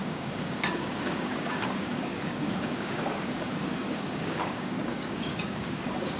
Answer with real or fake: fake